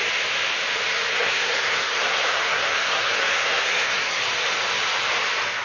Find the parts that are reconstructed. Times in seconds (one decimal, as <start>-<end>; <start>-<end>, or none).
1.1-4.2